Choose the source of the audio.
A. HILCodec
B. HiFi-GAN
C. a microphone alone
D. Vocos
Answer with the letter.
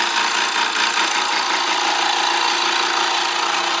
C